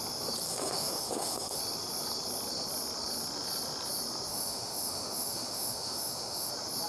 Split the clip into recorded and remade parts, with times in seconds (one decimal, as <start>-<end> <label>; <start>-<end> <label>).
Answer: 0.0-0.5 recorded; 0.5-1.6 remade; 1.6-4.3 recorded; 4.3-6.5 remade; 6.5-6.9 recorded